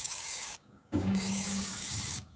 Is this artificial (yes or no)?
yes